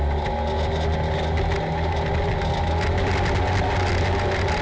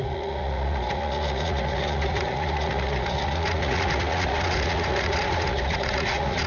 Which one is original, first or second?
first